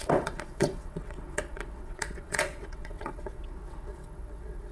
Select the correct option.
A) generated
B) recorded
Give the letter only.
A